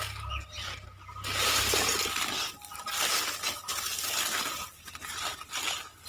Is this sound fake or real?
real